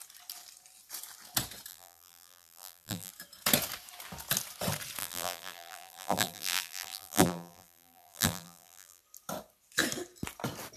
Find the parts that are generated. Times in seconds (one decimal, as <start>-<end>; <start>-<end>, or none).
1.7-3.1; 5.0-9.0